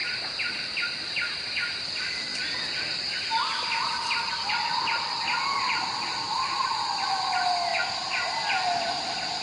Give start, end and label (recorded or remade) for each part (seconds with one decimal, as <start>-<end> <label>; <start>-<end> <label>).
0.0-0.5 recorded; 0.5-2.3 remade; 2.3-4.5 recorded; 4.5-7.7 remade; 7.7-8.3 recorded; 8.3-9.4 remade